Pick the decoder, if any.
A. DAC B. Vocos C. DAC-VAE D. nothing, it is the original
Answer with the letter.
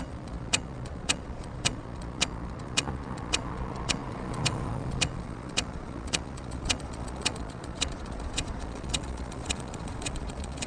B